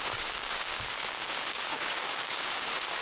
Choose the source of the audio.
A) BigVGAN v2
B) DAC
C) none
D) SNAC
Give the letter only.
B